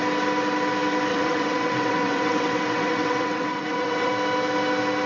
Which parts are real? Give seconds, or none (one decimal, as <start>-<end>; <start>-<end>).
0.0-1.1; 4.1-5.1